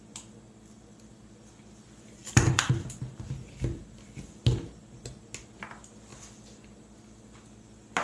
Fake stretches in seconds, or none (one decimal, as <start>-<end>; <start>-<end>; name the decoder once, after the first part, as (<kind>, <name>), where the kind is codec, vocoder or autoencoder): 2.2-4.4 (vocoder, BigVGAN v2); 6.1-7.3